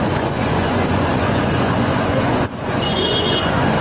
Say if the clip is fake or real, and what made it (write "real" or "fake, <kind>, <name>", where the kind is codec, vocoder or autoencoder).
fake, vocoder, Vocos